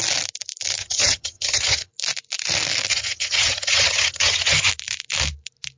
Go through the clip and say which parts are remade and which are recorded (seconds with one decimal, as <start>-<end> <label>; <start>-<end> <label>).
0.0-0.8 recorded; 0.8-1.9 remade; 1.9-2.9 recorded; 2.9-4.7 remade; 4.7-5.8 recorded